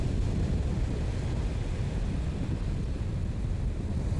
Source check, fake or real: real